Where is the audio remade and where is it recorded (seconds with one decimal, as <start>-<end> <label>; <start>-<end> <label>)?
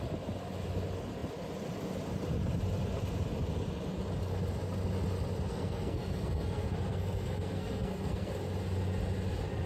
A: 0.0-5.5 recorded; 5.5-8.3 remade; 8.3-9.7 recorded